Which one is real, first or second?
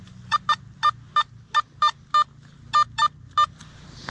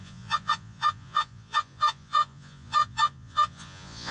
first